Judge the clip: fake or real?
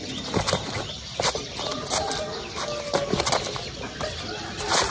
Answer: real